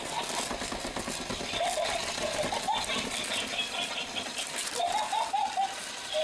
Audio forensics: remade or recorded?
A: recorded